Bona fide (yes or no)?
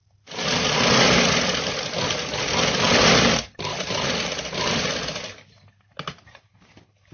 yes